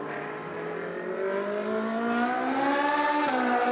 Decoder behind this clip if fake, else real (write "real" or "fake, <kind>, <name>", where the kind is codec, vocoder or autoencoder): real